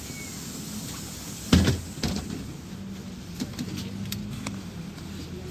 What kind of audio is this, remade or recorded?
recorded